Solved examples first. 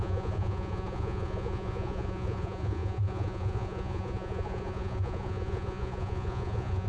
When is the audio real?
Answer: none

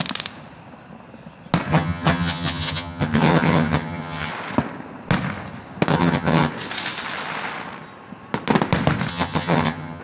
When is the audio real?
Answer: 0.0-1.7; 4.3-5.9; 6.5-9.1

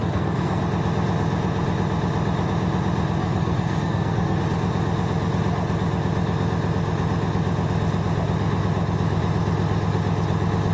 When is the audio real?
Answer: 0.6-3.2; 4.4-10.7

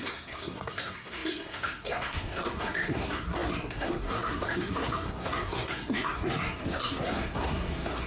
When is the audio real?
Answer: none

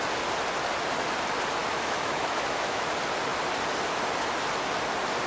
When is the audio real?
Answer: 0.0-1.6; 2.9-5.3

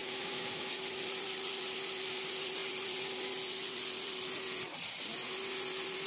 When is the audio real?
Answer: 0.7-6.1